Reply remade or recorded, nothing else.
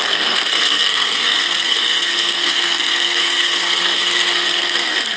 remade